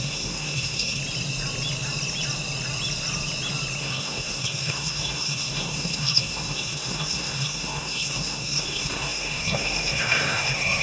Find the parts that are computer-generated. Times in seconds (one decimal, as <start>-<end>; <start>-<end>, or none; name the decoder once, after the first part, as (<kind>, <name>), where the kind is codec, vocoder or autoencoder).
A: 0.0-1.0 (codec, SNAC); 3.8-10.8